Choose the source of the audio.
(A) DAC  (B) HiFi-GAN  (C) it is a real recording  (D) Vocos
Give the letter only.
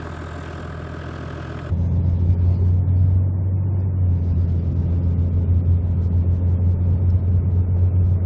C